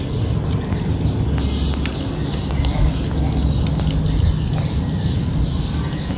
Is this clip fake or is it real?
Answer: real